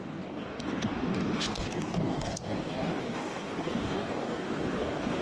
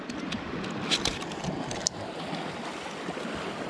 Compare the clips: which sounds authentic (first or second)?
second